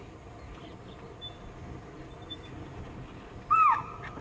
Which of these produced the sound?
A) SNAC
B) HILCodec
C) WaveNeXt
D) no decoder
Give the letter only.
D